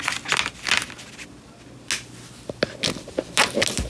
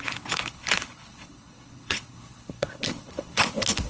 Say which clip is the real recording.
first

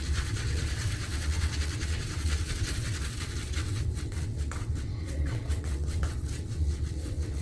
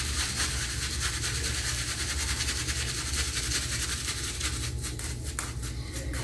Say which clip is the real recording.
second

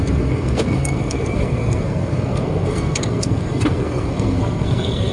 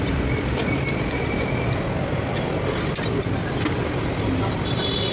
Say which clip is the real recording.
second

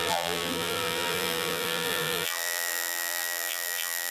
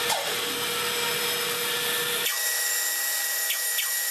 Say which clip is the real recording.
second